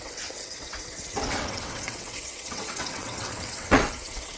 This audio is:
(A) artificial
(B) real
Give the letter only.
A